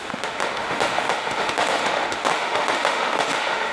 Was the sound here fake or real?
fake